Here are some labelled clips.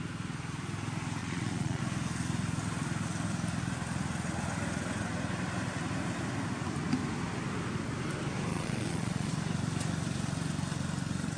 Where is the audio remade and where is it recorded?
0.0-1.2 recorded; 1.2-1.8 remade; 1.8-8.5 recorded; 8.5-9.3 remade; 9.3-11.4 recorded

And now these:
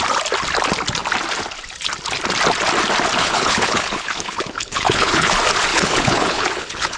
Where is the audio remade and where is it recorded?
0.0-3.2 recorded; 3.2-5.3 remade; 5.3-5.7 recorded; 5.7-7.0 remade

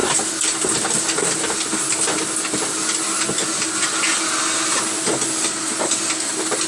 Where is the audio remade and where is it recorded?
0.0-6.7 recorded

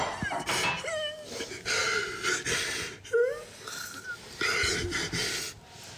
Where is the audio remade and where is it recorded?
0.0-6.0 recorded

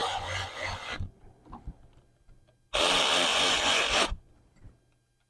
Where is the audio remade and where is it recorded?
0.0-1.2 remade; 1.2-3.3 recorded; 3.3-4.3 remade; 4.3-5.3 recorded

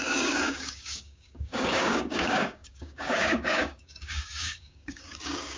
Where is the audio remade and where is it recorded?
0.0-5.6 remade

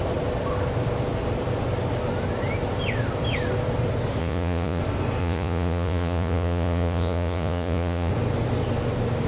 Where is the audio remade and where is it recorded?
0.0-4.2 recorded; 4.2-4.8 remade; 4.8-5.2 recorded; 5.2-8.1 remade; 8.1-9.3 recorded

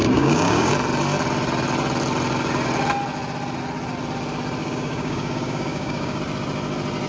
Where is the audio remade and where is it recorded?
0.0-0.7 remade; 0.7-4.6 recorded; 4.6-6.2 remade; 6.2-7.1 recorded